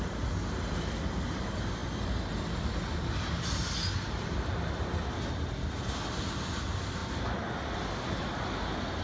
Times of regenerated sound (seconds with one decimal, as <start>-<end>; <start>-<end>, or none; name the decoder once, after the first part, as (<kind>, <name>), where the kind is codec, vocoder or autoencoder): none